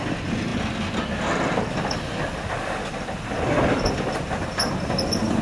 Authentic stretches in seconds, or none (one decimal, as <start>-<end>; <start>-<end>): 0.0-5.4